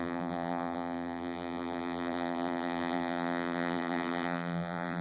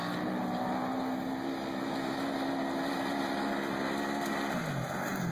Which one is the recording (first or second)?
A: second